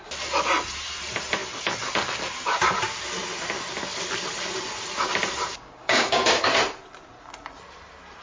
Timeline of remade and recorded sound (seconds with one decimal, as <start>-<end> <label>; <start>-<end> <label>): 0.0-5.5 recorded; 5.5-6.4 remade; 6.4-8.2 recorded